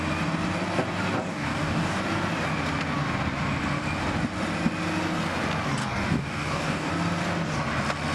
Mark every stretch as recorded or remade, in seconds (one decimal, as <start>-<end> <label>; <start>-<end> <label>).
0.0-1.3 recorded; 1.3-2.0 remade; 2.0-5.8 recorded; 5.8-6.9 remade; 6.9-8.1 recorded